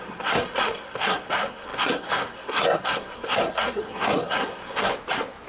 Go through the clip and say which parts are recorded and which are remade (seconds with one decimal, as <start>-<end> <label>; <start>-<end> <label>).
0.0-4.9 remade; 4.9-5.5 recorded